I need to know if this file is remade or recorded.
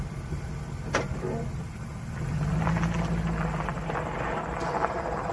recorded